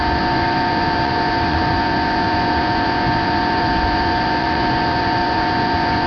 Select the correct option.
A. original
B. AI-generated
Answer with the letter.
B